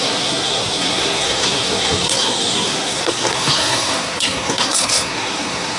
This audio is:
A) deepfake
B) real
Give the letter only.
A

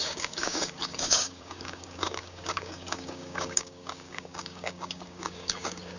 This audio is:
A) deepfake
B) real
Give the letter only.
A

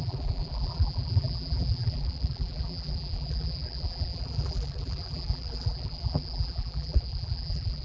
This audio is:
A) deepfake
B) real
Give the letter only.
A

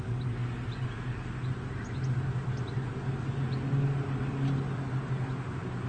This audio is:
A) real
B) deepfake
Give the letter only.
A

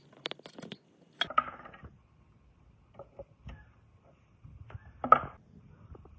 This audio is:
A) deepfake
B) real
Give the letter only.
B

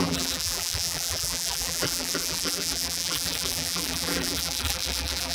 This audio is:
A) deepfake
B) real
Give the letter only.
A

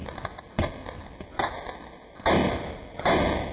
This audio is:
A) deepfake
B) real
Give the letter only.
B